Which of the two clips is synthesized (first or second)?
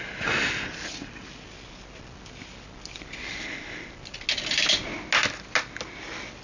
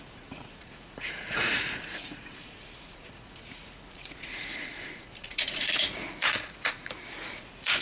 second